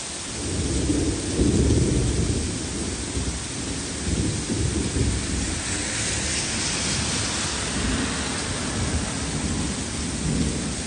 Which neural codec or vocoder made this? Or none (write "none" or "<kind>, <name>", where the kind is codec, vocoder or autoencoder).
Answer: none